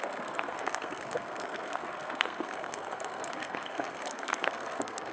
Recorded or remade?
remade